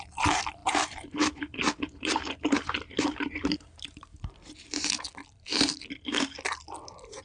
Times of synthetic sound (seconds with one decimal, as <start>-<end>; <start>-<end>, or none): 0.6-4.9